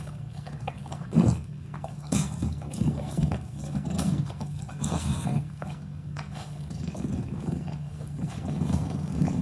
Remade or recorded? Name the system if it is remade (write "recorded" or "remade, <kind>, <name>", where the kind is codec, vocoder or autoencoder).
remade, codec, SNAC